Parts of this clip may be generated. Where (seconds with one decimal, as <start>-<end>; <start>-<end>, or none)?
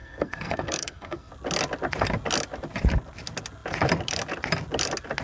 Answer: 0.0-1.3